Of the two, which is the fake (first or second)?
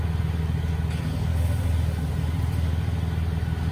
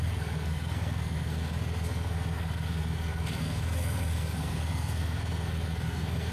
second